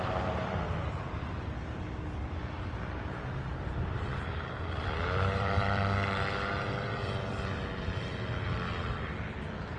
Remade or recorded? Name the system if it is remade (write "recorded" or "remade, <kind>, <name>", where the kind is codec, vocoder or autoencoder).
remade, vocoder, BigVGAN v2